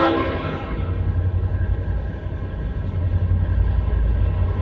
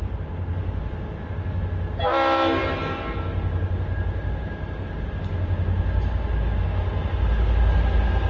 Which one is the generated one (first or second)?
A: first